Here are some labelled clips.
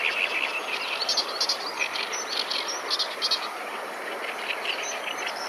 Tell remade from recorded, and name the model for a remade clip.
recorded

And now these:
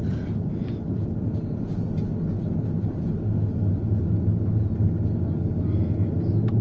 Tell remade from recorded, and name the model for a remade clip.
recorded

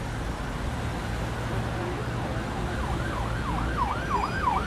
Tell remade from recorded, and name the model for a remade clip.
recorded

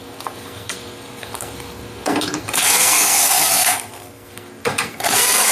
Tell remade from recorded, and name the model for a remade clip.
remade, codec, SNAC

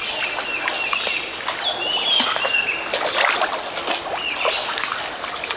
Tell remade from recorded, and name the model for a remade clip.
recorded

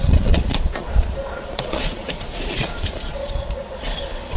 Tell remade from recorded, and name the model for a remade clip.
remade, vocoder, Vocos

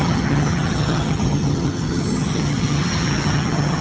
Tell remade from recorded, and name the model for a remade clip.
remade, vocoder, HiFi-GAN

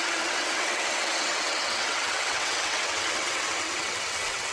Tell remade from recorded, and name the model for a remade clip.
remade, vocoder, WaveNeXt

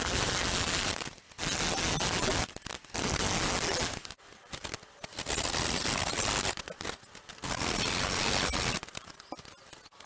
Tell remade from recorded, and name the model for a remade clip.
recorded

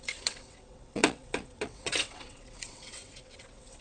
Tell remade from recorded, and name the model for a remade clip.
remade, vocoder, WaveNeXt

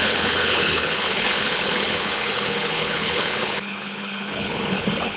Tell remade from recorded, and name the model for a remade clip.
remade, codec, HILCodec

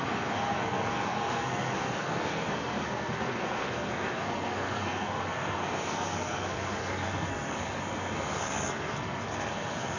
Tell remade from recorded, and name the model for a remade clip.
remade, codec, SNAC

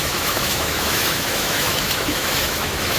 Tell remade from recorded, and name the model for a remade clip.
remade, autoencoder, DAC-VAE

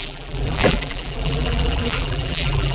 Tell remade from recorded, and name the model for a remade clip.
remade, vocoder, BigVGAN v2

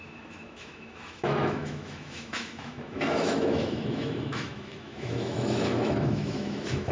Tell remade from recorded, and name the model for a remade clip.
remade, autoencoder, DAC-VAE